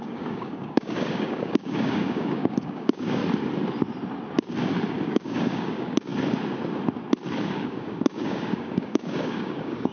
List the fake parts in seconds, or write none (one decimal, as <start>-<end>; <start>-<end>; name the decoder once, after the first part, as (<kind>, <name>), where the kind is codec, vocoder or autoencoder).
0.0-3.2 (codec, DAC); 4.9-6.1; 7.4-9.9